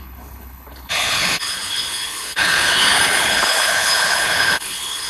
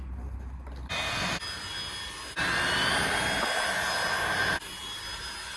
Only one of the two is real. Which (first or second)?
second